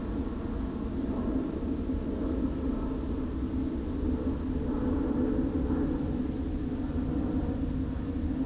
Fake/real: real